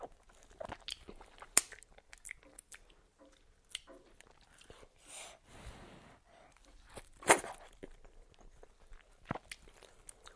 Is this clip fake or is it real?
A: real